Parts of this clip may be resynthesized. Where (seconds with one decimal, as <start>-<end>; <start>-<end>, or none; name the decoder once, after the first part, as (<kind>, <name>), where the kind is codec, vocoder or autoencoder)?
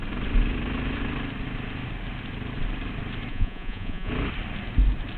3.3-4.1 (vocoder, Vocos)